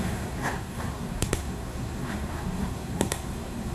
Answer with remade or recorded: remade